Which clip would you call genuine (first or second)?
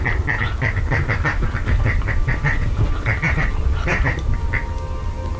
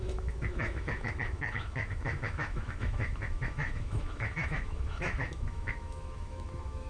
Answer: first